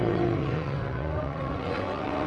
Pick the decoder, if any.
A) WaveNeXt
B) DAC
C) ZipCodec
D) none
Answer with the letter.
A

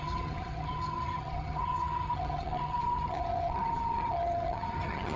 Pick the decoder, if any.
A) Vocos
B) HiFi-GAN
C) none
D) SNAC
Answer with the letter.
B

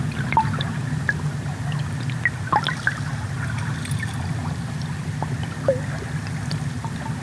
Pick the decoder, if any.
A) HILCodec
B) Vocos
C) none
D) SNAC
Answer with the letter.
C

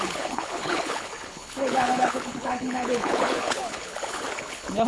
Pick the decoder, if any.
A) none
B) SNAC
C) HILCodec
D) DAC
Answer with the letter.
C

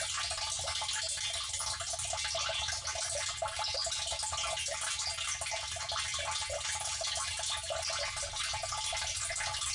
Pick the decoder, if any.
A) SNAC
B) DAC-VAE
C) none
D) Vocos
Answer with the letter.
C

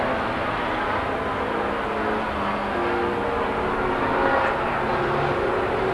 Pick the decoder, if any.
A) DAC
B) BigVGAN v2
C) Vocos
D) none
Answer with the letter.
D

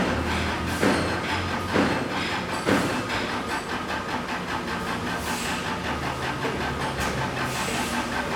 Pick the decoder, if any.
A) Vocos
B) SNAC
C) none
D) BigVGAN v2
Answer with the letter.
C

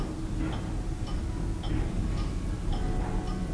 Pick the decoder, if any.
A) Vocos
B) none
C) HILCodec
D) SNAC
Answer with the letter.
B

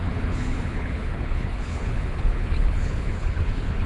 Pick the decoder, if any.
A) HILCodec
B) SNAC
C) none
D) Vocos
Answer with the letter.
A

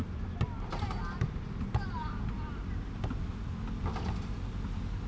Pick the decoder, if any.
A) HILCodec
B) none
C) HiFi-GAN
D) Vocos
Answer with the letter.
B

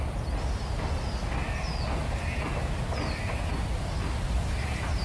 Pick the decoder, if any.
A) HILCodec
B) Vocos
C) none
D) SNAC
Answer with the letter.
C